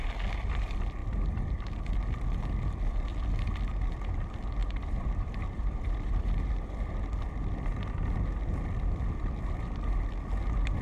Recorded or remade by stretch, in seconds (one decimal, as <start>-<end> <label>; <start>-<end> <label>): 0.0-4.6 recorded; 4.6-6.7 remade; 6.7-10.8 recorded